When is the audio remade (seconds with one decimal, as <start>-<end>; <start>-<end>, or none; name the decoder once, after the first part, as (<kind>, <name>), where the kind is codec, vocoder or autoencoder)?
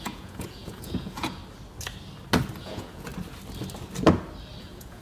0.0-1.4 (vocoder, Vocos); 2.6-3.1; 4.6-5.0